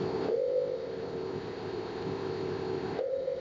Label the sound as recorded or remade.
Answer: remade